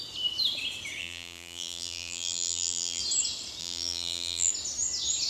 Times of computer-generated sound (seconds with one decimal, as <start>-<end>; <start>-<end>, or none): 1.0-3.0; 3.6-4.5